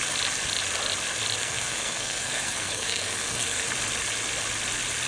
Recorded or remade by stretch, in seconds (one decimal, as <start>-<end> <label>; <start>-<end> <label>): 0.0-1.4 recorded; 1.4-3.6 remade; 3.6-5.1 recorded